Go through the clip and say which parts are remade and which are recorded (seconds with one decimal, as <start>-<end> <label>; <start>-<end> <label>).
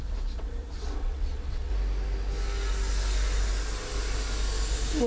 0.0-1.7 remade; 1.7-5.1 recorded